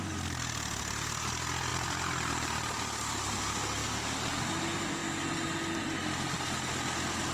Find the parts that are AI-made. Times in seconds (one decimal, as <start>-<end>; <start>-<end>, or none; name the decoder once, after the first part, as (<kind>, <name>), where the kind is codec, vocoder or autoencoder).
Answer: 1.7-3.4 (vocoder, BigVGAN v2); 3.8-4.5